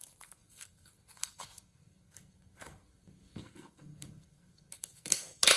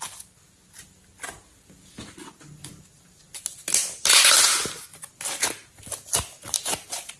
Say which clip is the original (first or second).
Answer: second